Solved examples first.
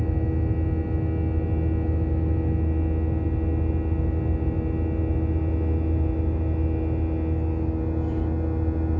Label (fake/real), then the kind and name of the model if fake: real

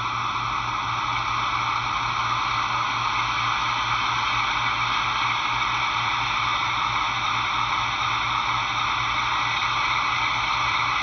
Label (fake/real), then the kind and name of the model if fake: real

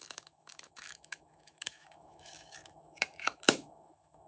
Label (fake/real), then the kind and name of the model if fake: fake, autoencoder, DAC-VAE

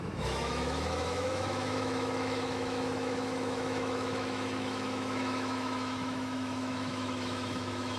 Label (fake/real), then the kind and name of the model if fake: fake, autoencoder, DAC-VAE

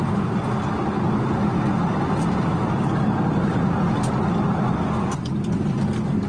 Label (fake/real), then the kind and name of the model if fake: real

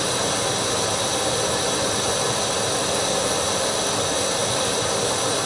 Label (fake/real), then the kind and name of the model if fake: real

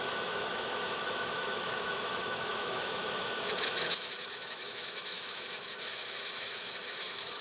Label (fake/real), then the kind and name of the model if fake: fake, autoencoder, DAC-VAE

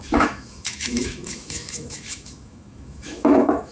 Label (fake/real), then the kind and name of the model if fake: fake, autoencoder, DAC-VAE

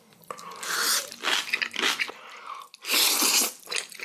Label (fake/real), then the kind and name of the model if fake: real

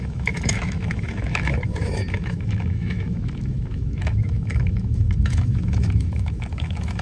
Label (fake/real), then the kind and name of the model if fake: fake, autoencoder, DAC-VAE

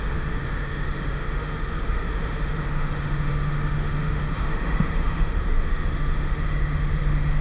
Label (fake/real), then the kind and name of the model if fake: fake, autoencoder, DAC-VAE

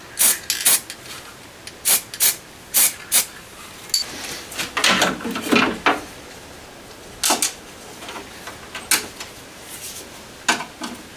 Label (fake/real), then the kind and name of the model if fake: real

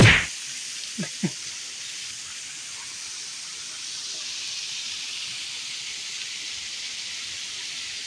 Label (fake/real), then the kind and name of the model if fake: real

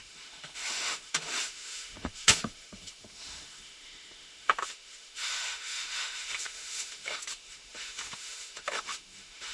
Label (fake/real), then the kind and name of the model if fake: fake, autoencoder, DAC-VAE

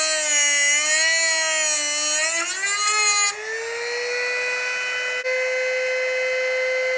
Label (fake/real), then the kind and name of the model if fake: real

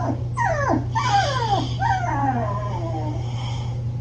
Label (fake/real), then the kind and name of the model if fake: real